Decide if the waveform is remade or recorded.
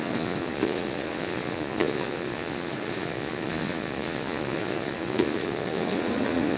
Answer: remade